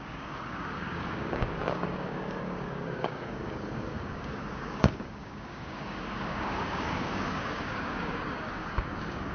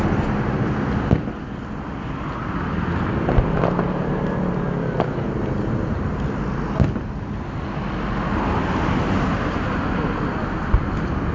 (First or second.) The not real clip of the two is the first